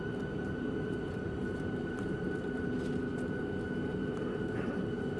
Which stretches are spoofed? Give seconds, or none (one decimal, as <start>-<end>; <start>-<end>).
0.0-3.1; 3.8-5.2